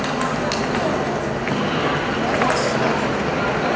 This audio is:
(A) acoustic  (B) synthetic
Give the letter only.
A